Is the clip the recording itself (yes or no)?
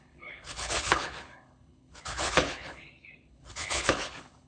no